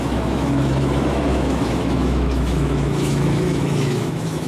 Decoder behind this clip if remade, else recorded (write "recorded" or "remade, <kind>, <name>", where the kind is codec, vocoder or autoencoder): remade, autoencoder, DAC-VAE